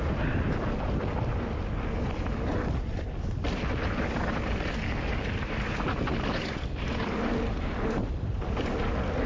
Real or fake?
real